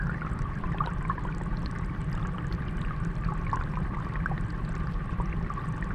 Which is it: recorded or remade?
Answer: recorded